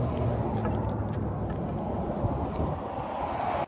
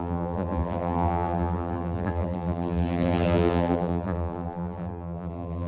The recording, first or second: first